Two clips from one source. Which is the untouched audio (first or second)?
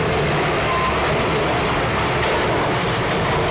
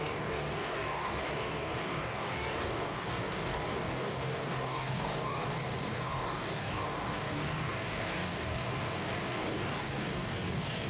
first